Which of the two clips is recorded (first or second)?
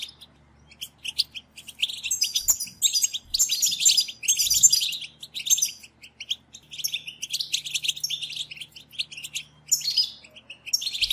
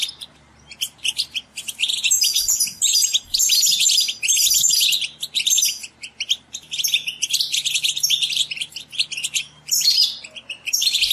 first